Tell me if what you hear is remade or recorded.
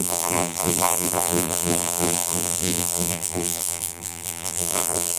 remade